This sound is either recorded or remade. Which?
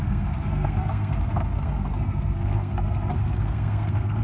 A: remade